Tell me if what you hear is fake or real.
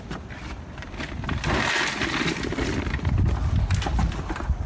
real